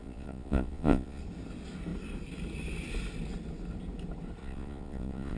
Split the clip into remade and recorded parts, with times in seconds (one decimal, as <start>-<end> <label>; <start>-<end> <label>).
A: 0.0-1.2 remade; 1.2-4.4 recorded; 4.4-5.4 remade